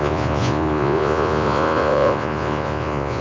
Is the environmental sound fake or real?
fake